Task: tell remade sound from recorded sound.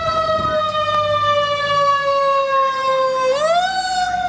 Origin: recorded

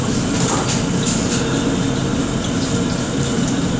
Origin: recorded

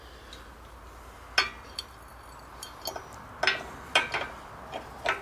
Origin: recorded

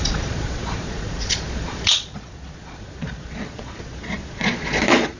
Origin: remade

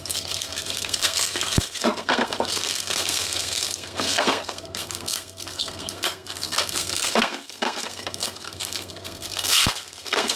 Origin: remade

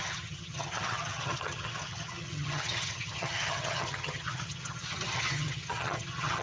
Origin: remade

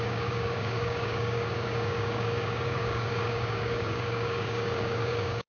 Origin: remade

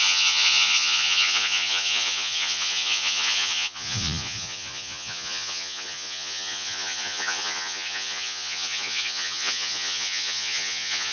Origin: remade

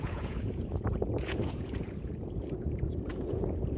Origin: remade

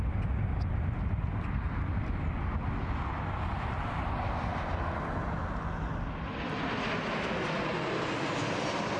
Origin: recorded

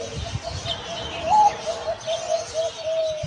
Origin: recorded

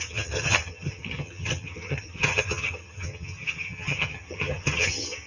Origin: remade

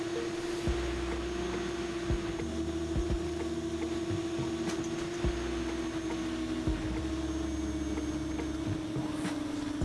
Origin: recorded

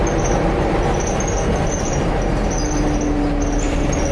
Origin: recorded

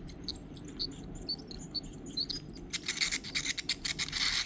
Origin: recorded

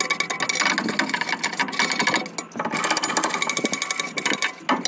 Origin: recorded